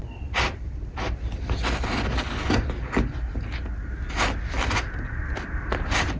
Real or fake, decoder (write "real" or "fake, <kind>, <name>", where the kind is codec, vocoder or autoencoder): real